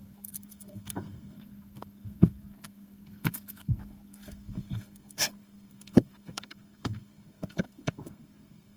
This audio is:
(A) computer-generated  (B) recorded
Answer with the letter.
A